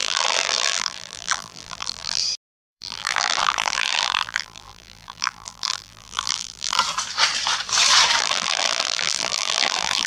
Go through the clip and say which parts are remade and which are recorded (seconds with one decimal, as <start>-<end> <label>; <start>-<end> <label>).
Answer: 0.0-2.2 remade; 2.2-2.7 recorded; 2.7-6.8 remade; 6.8-8.2 recorded; 8.2-10.1 remade